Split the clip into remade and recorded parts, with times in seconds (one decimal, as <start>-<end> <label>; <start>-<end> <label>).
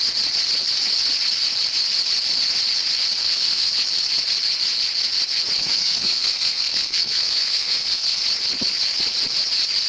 0.0-3.2 recorded; 3.2-3.7 remade; 3.7-5.6 recorded; 5.6-8.2 remade; 8.2-9.9 recorded